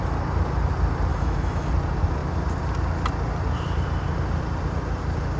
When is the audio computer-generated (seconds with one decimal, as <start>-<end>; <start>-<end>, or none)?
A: 1.1-1.7